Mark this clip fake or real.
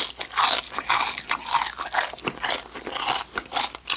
real